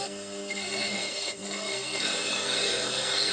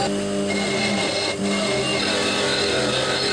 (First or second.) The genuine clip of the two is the second